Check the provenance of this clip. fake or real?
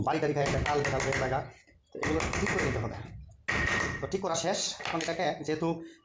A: real